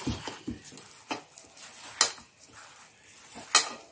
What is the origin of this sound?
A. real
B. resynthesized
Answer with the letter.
A